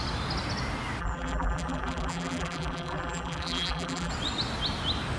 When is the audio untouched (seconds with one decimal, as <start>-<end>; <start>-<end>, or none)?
0.0-1.0; 4.1-5.2